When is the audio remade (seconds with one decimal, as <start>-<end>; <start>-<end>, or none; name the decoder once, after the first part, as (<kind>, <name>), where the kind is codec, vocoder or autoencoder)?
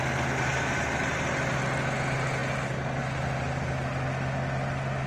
none